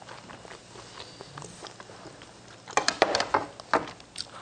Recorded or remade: recorded